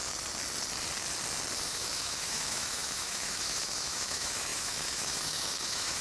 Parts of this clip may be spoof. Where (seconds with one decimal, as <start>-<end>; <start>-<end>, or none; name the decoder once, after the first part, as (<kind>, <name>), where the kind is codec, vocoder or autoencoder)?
1.6-6.0 (autoencoder, DAC-VAE)